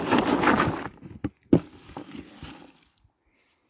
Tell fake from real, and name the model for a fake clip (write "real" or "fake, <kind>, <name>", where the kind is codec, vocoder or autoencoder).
real